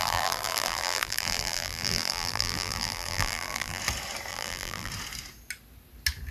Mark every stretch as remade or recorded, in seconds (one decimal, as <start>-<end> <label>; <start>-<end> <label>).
0.0-3.8 remade; 3.8-4.3 recorded; 4.3-4.9 remade; 4.9-6.3 recorded